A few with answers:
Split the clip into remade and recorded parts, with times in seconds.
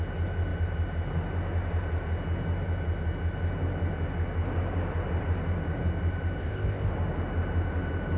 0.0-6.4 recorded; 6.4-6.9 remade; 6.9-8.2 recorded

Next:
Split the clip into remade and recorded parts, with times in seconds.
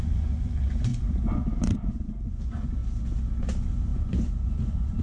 0.0-2.8 remade; 2.8-3.4 recorded; 3.4-5.0 remade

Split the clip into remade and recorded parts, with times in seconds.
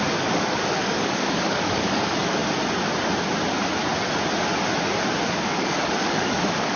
0.0-2.4 remade; 2.4-5.3 recorded; 5.3-6.8 remade